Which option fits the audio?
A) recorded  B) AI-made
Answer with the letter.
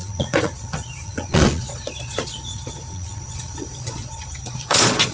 B